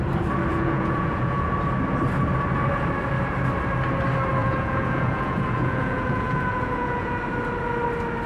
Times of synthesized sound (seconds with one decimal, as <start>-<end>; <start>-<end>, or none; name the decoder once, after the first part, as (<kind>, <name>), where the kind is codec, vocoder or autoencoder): 0.5-1.5 (vocoder, Vocos); 4.4-7.1